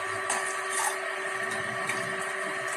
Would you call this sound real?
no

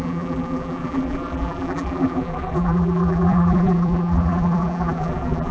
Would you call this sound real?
no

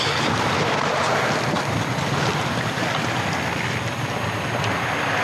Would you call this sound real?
yes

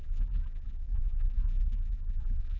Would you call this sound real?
no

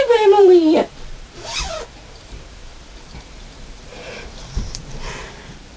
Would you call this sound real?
no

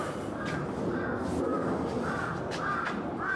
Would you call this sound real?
yes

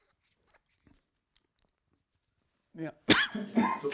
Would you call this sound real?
yes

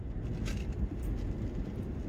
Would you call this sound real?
yes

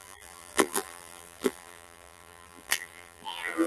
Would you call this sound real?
no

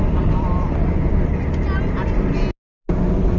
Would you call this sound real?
yes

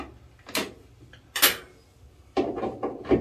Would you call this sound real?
yes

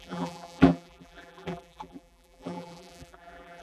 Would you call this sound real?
no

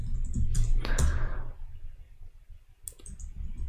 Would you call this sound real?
yes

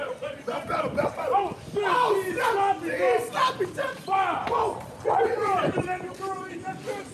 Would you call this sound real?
yes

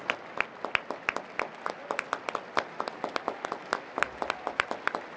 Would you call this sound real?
yes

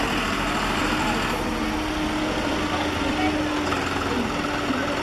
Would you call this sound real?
yes